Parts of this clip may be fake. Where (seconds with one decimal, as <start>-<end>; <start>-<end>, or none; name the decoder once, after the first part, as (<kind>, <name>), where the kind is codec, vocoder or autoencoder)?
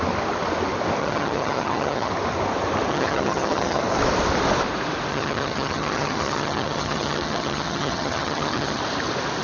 1.0-2.1 (vocoder, HiFi-GAN); 2.9-3.8; 5.1-8.8